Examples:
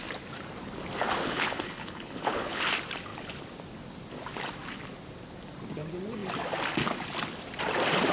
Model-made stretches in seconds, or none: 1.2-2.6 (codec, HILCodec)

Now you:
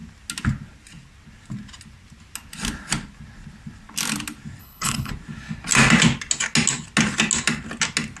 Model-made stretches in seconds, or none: 4.6-5.1 (codec, HILCodec)

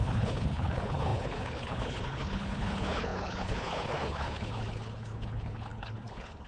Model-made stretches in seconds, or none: 0.0-6.5 (codec, HILCodec)

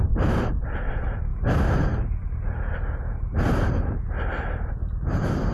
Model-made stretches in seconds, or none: none

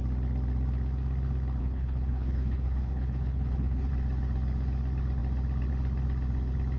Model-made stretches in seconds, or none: 1.6-3.9 (codec, HILCodec)

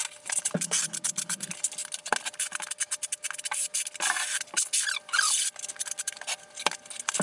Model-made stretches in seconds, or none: none